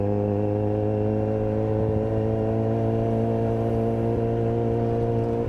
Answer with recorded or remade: recorded